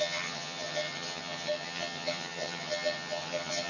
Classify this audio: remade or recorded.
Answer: remade